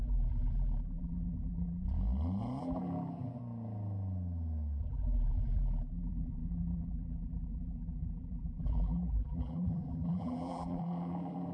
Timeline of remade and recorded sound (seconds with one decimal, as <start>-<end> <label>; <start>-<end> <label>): 0.0-1.8 remade; 1.8-2.6 recorded; 2.6-3.4 remade; 3.4-4.8 recorded; 4.8-11.5 remade